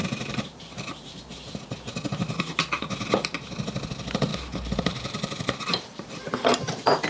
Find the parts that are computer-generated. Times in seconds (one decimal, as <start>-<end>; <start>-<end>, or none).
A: 0.0-1.2; 4.3-6.6